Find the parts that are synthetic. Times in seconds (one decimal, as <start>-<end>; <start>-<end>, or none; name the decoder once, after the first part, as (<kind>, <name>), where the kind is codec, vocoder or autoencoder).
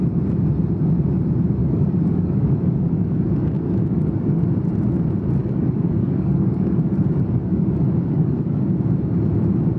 1.6-4.4 (codec, DAC); 5.4-8.6